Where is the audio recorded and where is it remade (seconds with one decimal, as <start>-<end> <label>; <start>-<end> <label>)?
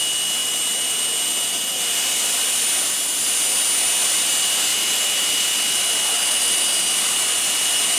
0.0-8.0 recorded